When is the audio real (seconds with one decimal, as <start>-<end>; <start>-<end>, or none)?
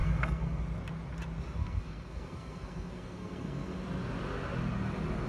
0.6-1.6; 3.8-5.3